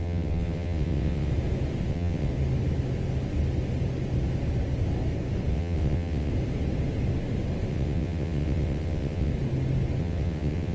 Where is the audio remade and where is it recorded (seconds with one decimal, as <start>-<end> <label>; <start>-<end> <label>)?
0.0-1.3 remade; 1.3-1.9 recorded; 1.9-2.3 remade; 2.3-5.5 recorded; 5.5-6.3 remade; 6.3-7.7 recorded; 7.7-9.3 remade; 9.3-10.0 recorded; 10.0-10.7 remade